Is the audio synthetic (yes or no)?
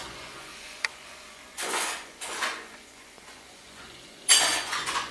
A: yes